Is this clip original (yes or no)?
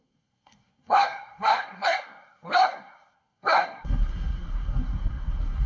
no